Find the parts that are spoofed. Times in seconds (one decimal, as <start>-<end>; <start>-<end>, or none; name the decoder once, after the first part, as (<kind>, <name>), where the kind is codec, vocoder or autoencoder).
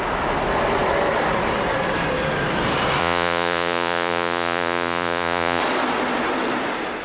3.0-5.6 (vocoder, Vocos)